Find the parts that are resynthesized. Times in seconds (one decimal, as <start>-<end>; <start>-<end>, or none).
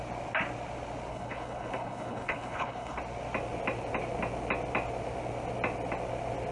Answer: 1.1-3.0